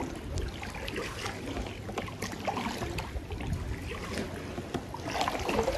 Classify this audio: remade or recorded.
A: recorded